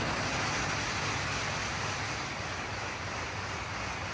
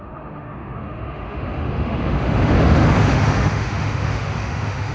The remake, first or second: second